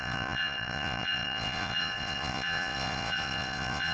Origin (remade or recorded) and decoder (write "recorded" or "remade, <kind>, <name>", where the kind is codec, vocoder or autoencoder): remade, vocoder, Vocos